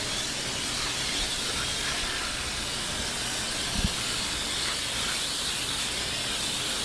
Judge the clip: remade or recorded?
recorded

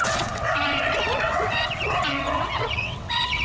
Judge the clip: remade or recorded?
remade